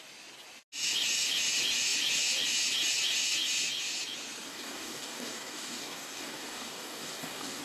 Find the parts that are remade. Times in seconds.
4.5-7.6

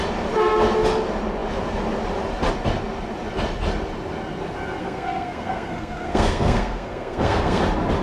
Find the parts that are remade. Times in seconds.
4.8-7.6